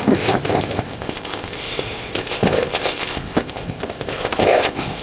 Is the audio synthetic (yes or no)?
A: yes